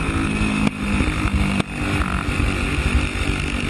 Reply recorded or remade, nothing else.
recorded